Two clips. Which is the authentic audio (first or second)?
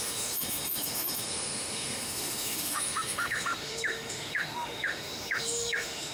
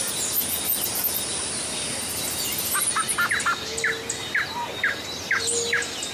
second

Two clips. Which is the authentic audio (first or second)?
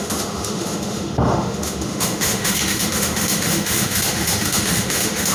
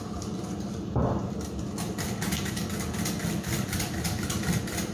second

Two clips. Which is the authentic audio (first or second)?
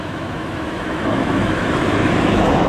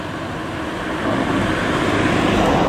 second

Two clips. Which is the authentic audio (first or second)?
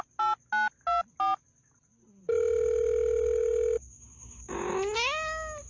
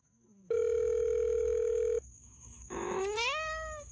first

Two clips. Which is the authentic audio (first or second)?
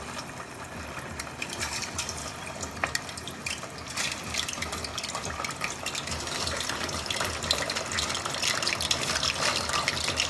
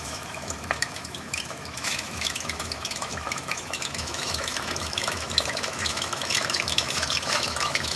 first